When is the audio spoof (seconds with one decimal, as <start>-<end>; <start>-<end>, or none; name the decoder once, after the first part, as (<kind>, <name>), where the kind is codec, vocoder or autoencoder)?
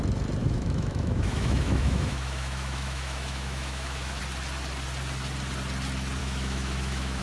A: 0.4-4.2 (autoencoder, DAC-VAE); 6.2-7.2